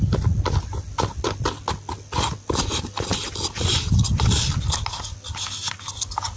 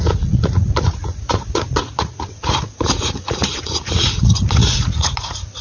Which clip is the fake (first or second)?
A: second